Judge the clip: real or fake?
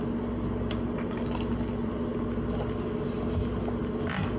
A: real